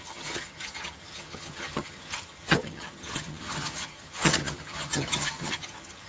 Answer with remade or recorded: remade